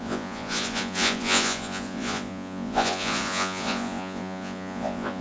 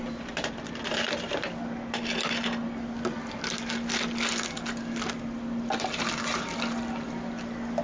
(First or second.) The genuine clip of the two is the second